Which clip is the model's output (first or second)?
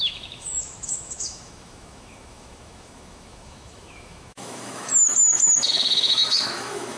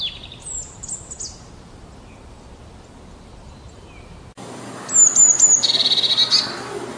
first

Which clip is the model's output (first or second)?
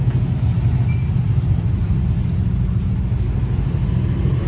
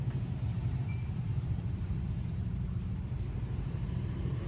second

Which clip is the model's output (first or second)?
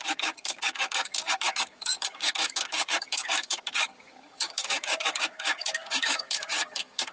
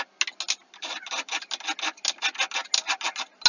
first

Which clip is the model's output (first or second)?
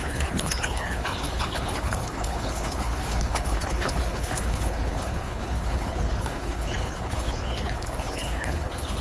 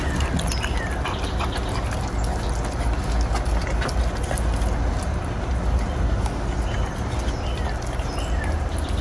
first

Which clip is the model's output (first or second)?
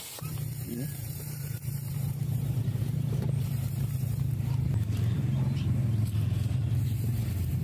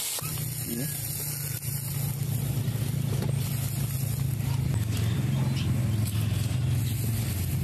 first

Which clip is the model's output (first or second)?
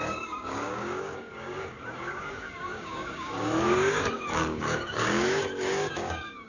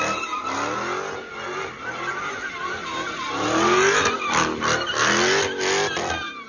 first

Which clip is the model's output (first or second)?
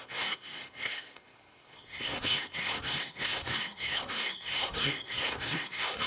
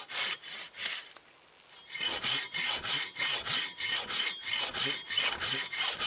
first